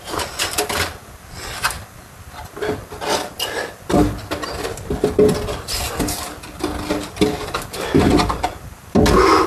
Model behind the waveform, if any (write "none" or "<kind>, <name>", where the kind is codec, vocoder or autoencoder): none